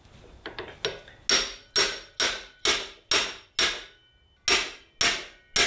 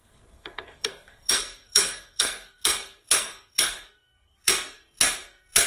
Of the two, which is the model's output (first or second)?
second